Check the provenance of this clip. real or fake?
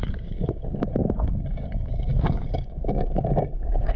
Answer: fake